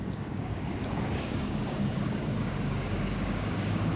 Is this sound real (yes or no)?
no